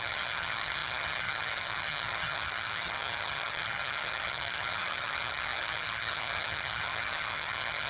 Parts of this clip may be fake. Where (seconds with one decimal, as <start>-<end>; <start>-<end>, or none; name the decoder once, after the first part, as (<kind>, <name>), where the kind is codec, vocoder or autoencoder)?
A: 0.0-7.9 (vocoder, HiFi-GAN)

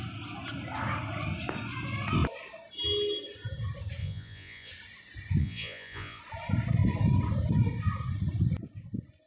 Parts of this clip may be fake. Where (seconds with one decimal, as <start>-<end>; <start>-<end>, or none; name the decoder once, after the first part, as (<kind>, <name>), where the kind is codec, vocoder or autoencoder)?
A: 4.0-4.7 (vocoder, Vocos); 5.4-6.2